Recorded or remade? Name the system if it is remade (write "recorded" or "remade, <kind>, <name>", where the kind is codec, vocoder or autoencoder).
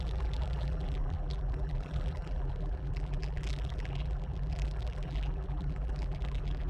remade, vocoder, BigVGAN v2